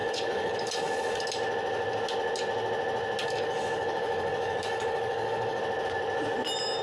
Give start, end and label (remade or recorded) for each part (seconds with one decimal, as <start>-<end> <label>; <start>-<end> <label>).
0.0-1.2 remade; 1.2-3.2 recorded; 3.2-5.6 remade; 5.6-6.8 recorded